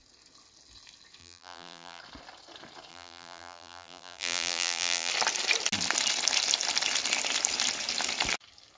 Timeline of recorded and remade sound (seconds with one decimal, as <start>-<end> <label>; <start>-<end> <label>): 0.0-1.2 recorded; 1.2-2.0 remade; 2.0-2.9 recorded; 2.9-5.1 remade; 5.1-8.8 recorded